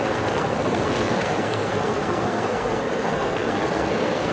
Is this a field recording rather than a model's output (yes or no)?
no